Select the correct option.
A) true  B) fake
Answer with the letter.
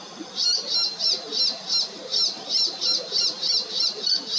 A